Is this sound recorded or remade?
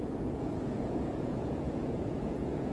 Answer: remade